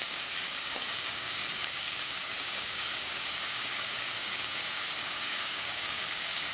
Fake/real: fake